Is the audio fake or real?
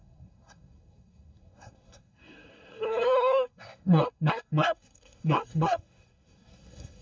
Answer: fake